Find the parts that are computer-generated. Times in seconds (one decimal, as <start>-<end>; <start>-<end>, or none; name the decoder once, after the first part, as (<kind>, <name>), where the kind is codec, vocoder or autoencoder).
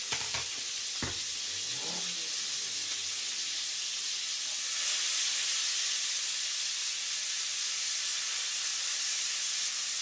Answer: none